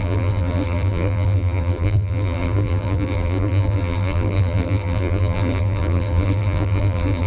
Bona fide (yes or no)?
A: no